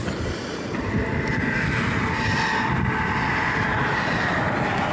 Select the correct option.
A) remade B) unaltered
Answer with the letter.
B